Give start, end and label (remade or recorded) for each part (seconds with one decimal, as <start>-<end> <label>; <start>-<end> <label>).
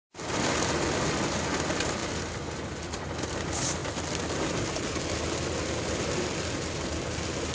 0.0-7.5 recorded